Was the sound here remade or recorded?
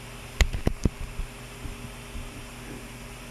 recorded